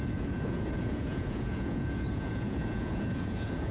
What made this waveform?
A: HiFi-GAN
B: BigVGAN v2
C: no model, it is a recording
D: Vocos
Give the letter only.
D